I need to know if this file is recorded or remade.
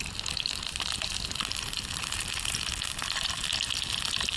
remade